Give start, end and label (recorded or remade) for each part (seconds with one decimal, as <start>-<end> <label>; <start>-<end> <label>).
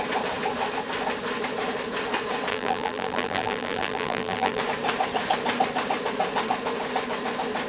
0.0-2.5 recorded; 2.5-4.6 remade; 4.6-7.7 recorded